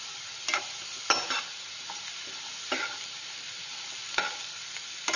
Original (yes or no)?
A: yes